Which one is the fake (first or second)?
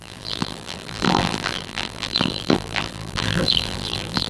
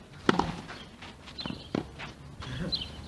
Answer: first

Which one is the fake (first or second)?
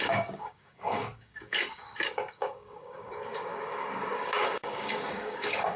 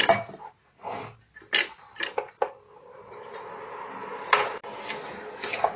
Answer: first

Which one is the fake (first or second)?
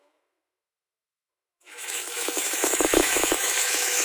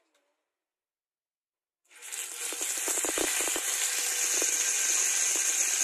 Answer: first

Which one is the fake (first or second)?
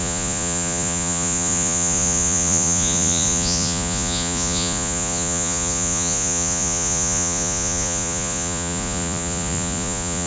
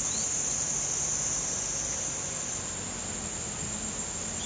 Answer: first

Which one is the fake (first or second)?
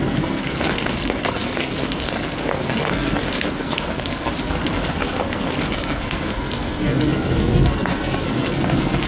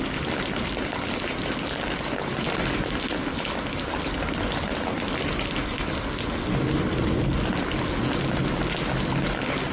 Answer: first